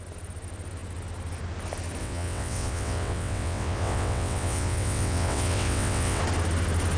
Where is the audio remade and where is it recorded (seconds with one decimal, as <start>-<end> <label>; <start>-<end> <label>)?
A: 0.0-2.0 recorded; 2.0-6.2 remade; 6.2-7.0 recorded